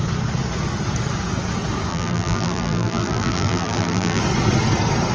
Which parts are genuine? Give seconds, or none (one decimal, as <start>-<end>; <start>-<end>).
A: 0.0-1.9; 4.2-5.1